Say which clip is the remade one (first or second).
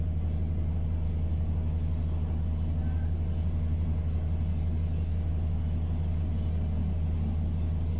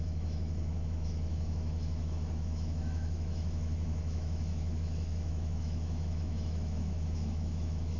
second